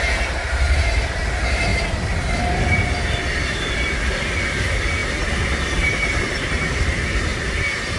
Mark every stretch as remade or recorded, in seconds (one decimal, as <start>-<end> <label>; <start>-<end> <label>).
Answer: 0.0-1.7 remade; 1.7-3.4 recorded; 3.4-8.0 remade